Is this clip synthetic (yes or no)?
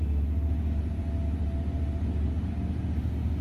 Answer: no